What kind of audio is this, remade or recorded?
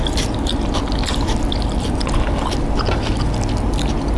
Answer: recorded